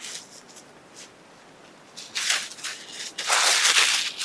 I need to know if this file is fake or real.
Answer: real